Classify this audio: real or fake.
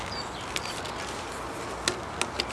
real